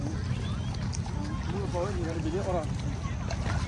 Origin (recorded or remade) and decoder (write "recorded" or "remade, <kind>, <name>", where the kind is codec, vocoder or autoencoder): recorded